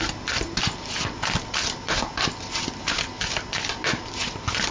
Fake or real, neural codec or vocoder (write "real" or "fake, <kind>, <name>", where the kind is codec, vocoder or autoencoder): real